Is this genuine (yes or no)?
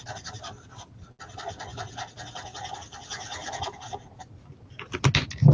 yes